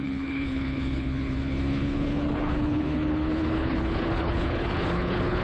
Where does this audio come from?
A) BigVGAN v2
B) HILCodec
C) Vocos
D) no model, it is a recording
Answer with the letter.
B